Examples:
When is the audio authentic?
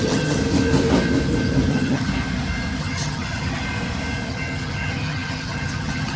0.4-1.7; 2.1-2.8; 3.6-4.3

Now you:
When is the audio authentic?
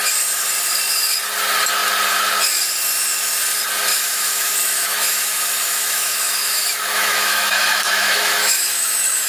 0.0-3.9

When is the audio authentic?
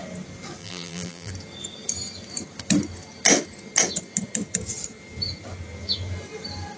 0.0-0.6; 1.3-6.8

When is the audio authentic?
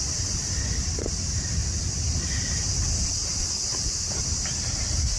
0.0-5.2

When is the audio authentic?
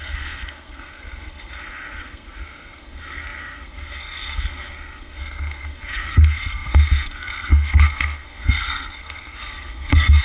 none